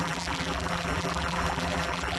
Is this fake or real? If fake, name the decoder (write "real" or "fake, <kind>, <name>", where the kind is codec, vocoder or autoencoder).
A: fake, vocoder, BigVGAN v2